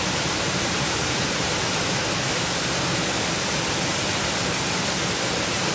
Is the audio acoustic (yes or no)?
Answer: yes